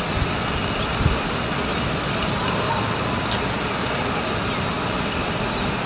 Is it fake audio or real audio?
real